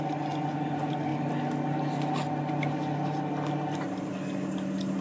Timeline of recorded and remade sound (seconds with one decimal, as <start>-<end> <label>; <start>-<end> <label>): 0.0-5.0 recorded